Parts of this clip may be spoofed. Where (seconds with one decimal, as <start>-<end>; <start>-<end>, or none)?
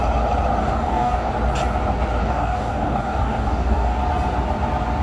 0.6-1.3; 2.2-4.0